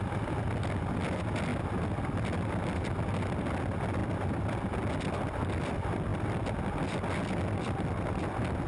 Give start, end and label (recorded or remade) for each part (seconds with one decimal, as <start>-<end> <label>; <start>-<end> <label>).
0.0-8.7 recorded